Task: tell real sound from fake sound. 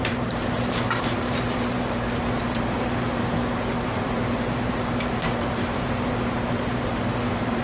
fake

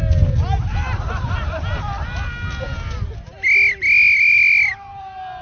real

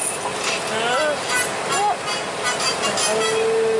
real